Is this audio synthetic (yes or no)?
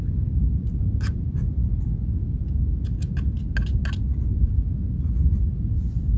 no